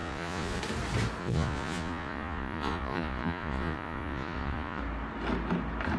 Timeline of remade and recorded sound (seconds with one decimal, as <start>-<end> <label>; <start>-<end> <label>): 0.0-0.6 remade; 0.6-1.2 recorded; 1.2-4.8 remade; 4.8-6.0 recorded